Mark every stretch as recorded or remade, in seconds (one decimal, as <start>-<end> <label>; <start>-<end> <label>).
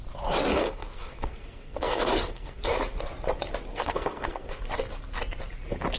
0.0-0.5 recorded; 0.5-2.6 remade; 2.6-3.7 recorded; 3.7-4.6 remade; 4.6-6.0 recorded